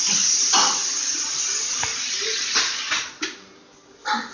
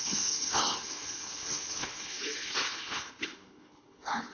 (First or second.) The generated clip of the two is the second